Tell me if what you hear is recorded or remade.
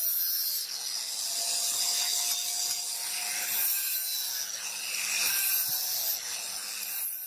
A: recorded